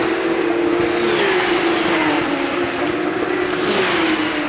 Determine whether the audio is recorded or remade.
recorded